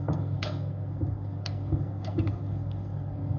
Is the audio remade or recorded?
remade